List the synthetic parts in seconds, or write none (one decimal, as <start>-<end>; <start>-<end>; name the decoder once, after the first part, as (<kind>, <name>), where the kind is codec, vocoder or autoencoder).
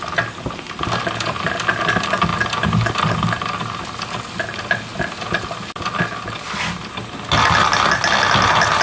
none